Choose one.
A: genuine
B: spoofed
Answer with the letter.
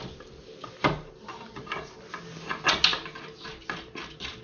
A